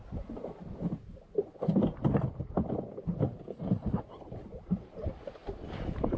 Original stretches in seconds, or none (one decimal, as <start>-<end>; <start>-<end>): 0.0-3.5; 4.0-6.2